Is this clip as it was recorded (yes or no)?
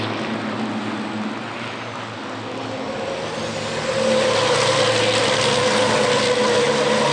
yes